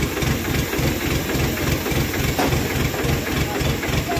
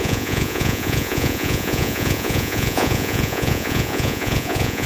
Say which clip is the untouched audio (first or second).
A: first